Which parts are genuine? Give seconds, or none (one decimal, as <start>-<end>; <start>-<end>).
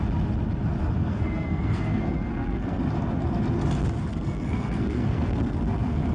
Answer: 0.0-1.0; 2.8-4.1